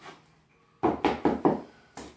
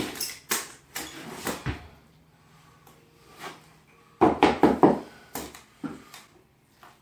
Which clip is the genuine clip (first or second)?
first